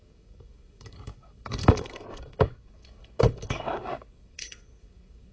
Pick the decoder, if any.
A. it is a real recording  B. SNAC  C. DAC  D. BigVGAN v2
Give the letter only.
C